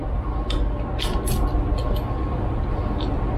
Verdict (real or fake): real